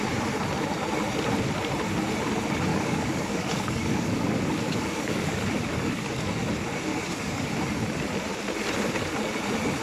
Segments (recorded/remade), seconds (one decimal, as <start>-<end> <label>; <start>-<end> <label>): 0.0-2.7 recorded; 2.7-6.5 remade; 6.5-6.9 recorded; 6.9-7.5 remade; 7.5-9.8 recorded